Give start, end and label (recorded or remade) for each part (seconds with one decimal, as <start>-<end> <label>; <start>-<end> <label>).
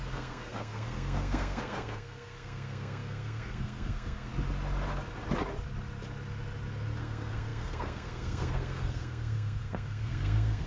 0.0-4.3 remade; 4.3-7.0 recorded; 7.0-10.7 remade